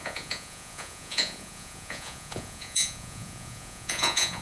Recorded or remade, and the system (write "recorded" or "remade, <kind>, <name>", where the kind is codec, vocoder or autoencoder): remade, vocoder, Vocos